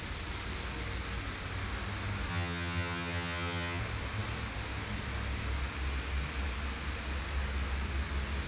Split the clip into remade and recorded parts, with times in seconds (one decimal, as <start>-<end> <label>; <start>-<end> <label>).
0.0-2.3 recorded; 2.3-3.8 remade; 3.8-8.5 recorded